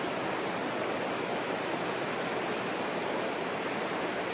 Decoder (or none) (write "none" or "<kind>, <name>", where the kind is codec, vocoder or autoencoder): none